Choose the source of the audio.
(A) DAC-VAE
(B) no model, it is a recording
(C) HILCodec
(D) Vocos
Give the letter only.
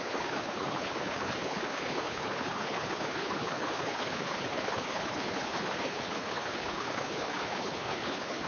C